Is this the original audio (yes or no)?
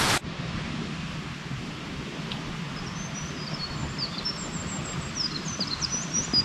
no